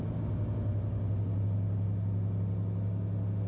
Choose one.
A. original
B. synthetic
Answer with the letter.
A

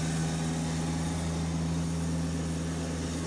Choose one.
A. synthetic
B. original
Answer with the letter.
B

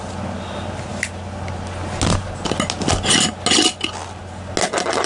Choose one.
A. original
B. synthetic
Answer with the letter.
A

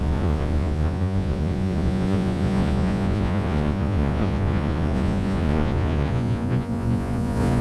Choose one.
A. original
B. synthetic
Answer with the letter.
B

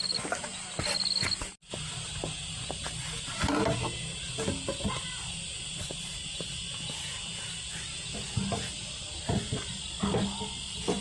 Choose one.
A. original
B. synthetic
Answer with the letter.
A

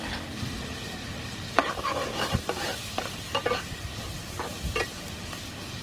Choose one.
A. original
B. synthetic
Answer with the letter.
A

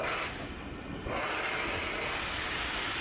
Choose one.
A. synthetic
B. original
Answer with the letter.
B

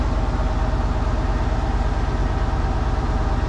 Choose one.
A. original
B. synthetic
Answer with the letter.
A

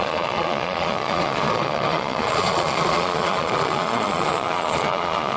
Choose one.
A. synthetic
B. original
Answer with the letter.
A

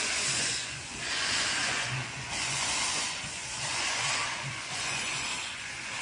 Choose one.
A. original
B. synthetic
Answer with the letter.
B